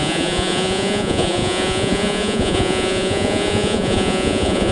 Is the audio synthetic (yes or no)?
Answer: yes